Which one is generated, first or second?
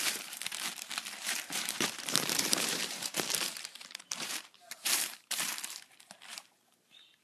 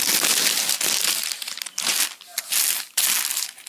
first